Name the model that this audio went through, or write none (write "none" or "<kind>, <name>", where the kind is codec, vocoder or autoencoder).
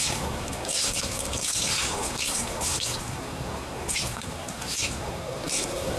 codec, SNAC